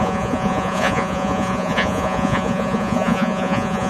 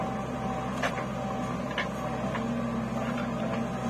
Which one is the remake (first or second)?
first